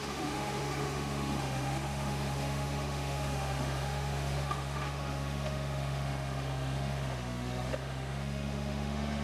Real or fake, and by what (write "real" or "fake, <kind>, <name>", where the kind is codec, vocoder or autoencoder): fake, autoencoder, DAC-VAE